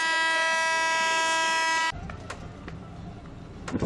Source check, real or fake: real